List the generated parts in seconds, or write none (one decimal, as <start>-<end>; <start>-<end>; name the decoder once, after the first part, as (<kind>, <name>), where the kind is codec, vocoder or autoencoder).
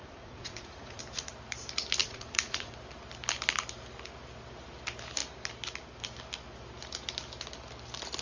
0.0-1.0 (vocoder, Vocos); 2.0-2.7